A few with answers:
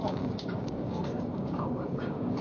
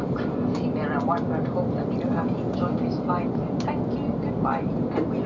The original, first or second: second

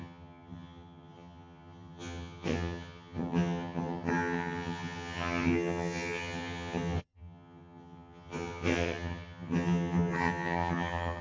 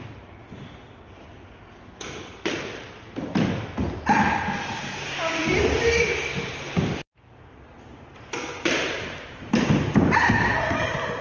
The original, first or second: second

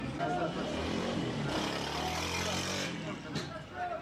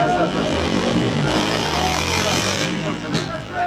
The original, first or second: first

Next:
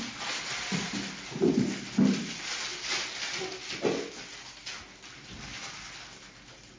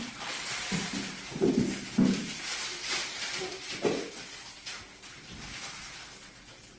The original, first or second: first